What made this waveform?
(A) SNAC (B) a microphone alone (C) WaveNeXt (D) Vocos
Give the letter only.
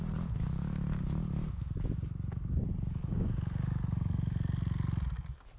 B